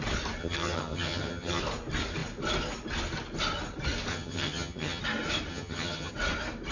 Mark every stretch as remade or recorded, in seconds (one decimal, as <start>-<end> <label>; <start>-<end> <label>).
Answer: 0.0-0.4 recorded; 0.4-1.6 remade; 1.6-4.1 recorded; 4.1-5.0 remade; 5.0-5.5 recorded; 5.5-6.1 remade; 6.1-6.7 recorded